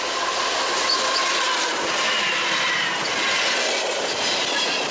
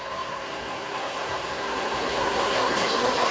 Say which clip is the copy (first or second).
second